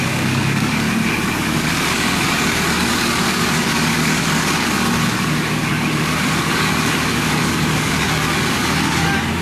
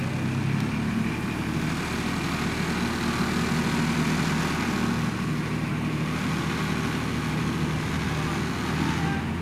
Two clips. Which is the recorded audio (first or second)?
second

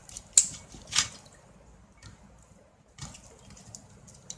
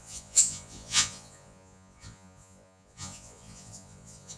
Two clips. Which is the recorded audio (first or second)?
first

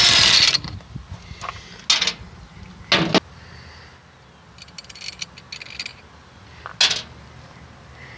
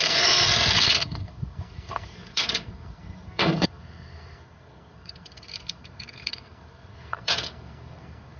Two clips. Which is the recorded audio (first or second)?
first